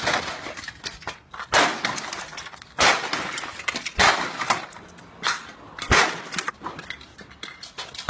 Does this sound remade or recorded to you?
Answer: recorded